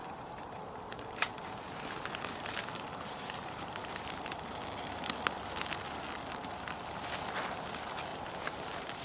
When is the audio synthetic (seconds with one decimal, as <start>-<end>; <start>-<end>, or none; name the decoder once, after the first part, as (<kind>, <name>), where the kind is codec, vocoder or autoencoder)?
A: 0.0-4.6 (vocoder, BigVGAN v2); 8.1-9.0